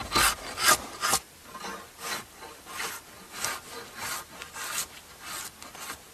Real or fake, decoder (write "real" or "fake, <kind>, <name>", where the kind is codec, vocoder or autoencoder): real